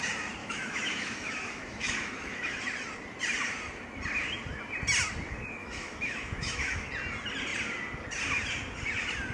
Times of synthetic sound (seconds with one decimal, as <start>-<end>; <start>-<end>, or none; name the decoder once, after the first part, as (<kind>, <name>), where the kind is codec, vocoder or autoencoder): 0.4-2.6 (autoencoder, DAC-VAE); 5.6-6.9